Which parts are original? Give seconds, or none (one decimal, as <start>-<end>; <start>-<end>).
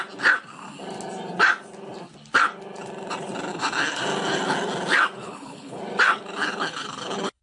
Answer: 0.0-3.5; 4.0-5.2; 5.8-6.4